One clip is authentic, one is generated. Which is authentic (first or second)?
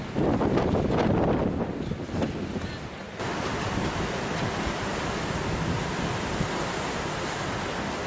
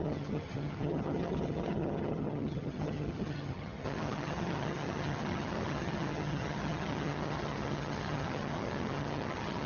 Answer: first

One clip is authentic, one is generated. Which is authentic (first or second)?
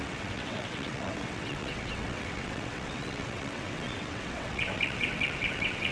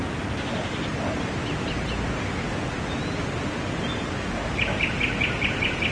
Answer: second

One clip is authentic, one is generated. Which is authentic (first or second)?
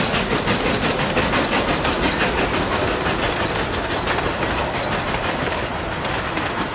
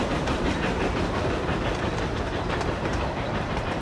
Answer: first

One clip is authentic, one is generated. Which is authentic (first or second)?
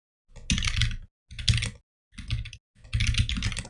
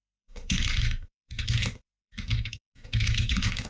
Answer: first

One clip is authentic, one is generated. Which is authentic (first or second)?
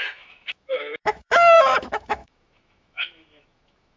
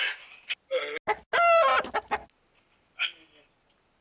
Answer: second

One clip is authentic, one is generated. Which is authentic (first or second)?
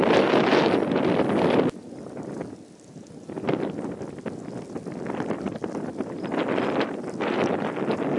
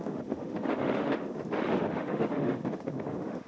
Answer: first